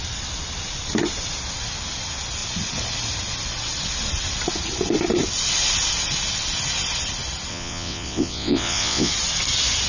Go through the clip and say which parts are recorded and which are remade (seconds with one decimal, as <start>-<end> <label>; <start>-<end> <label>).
0.0-7.5 recorded; 7.5-9.1 remade; 9.1-9.9 recorded